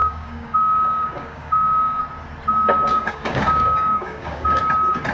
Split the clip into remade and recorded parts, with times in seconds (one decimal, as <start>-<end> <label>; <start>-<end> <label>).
0.0-2.0 remade; 2.0-2.9 recorded; 2.9-4.6 remade; 4.6-5.1 recorded